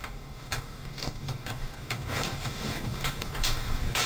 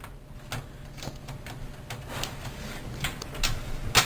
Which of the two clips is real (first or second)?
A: second